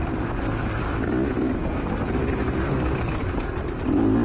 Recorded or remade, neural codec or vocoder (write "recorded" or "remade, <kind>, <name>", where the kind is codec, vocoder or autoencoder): recorded